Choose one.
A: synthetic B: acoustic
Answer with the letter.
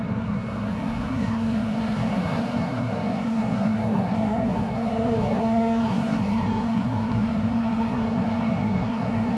A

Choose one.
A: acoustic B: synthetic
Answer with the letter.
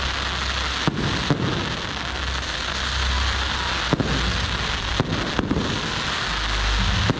A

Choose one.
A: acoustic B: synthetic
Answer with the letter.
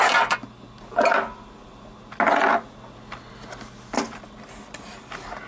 A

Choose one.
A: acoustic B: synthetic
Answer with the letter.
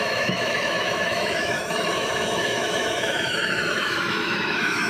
B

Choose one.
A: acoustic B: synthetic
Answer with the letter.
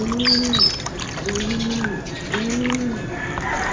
A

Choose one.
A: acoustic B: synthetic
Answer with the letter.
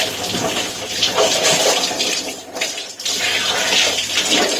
A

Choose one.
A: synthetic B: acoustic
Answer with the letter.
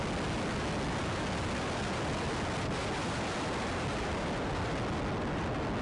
B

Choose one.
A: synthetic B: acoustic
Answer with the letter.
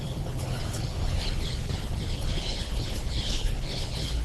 A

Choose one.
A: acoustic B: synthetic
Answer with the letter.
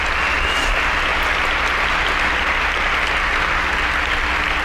A